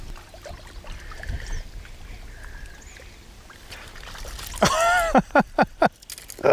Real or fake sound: real